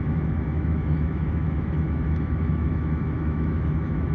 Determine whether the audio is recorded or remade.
remade